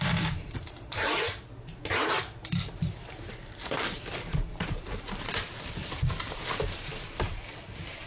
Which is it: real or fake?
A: fake